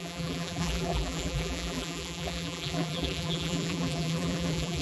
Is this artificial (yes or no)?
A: yes